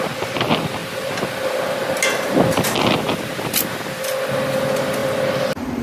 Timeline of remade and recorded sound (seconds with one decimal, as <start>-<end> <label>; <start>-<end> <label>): 0.0-5.8 recorded